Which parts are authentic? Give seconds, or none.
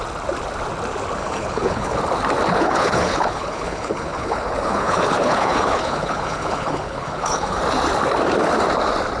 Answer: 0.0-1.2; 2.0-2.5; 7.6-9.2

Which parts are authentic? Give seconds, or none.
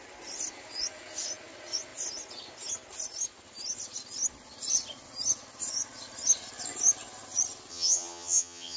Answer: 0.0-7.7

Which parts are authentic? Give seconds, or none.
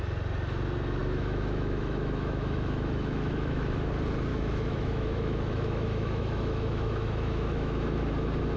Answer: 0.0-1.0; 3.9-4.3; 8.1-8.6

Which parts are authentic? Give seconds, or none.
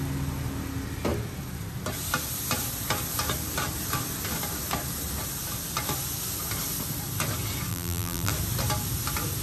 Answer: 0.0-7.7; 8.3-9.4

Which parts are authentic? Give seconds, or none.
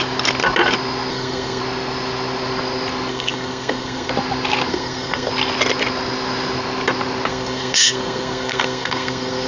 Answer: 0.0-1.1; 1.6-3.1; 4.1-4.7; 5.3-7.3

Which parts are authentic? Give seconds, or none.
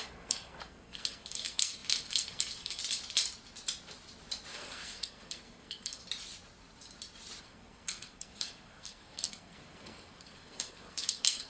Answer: 2.8-4.5; 6.0-7.4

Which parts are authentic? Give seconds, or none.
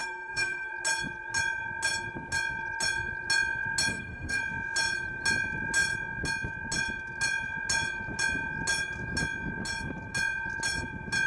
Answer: 0.7-3.9; 4.4-11.3